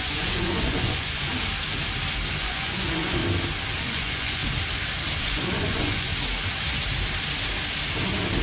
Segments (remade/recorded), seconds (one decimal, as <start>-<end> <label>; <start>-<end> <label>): 0.0-1.3 remade; 1.3-2.4 recorded; 2.4-3.2 remade; 3.2-3.8 recorded; 3.8-4.4 remade; 4.4-5.2 recorded; 5.2-6.1 remade; 6.1-8.4 recorded